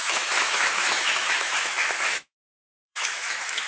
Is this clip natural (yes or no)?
no